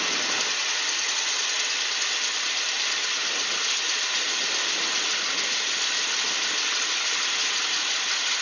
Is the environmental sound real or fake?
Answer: real